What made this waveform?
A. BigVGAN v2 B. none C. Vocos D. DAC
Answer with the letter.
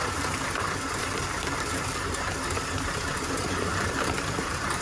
A